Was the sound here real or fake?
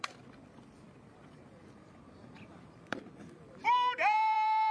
fake